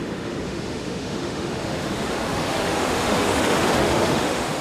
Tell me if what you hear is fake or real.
fake